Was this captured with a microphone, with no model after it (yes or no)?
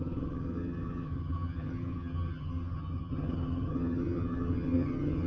no